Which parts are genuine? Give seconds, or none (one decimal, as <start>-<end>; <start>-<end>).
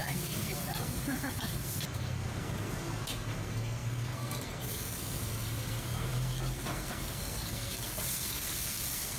none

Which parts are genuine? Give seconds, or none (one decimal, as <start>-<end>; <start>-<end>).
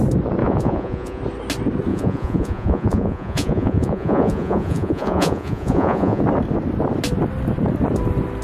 0.0-0.4; 1.2-1.9; 6.2-8.4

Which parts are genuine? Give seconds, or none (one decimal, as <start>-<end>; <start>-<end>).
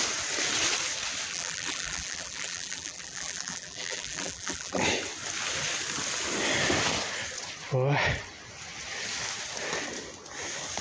0.0-1.3; 4.8-10.8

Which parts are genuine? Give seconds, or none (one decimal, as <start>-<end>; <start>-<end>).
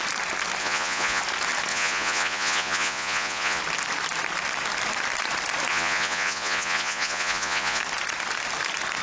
0.0-0.6; 1.2-1.7; 3.6-5.7; 7.8-9.0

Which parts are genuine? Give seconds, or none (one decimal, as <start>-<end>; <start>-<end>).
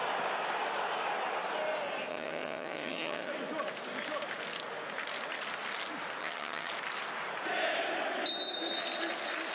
0.0-2.1; 3.3-6.2; 6.7-9.5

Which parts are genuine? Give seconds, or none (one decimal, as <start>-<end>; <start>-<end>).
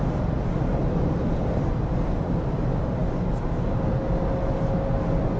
0.0-5.4